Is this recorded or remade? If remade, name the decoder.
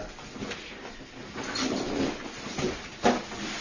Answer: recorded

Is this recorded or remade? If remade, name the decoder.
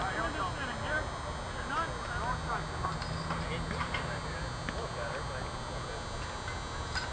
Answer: recorded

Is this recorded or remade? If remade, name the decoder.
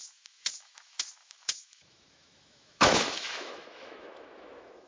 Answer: remade, autoencoder, DAC-VAE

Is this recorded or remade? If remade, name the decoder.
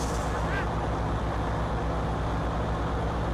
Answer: recorded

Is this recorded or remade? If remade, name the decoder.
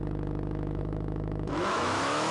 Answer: remade, autoencoder, DAC-VAE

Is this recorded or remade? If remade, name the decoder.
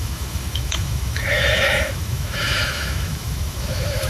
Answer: remade, autoencoder, DAC-VAE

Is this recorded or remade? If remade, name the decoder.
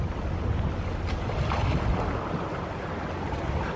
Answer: recorded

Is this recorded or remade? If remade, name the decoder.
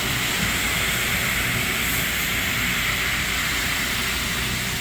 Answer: recorded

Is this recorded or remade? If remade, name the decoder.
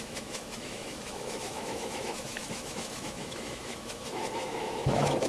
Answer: remade, autoencoder, DAC-VAE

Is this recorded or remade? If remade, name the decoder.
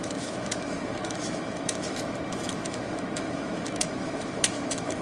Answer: remade, autoencoder, DAC-VAE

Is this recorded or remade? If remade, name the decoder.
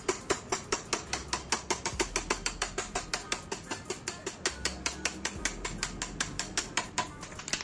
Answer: recorded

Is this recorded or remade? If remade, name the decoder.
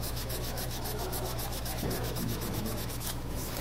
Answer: remade, autoencoder, DAC-VAE